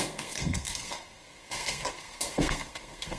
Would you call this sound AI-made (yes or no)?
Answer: yes